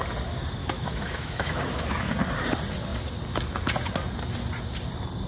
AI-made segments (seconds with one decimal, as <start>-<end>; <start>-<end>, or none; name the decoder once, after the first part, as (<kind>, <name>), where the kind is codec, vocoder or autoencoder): 0.6-2.1 (autoencoder, DAC-VAE)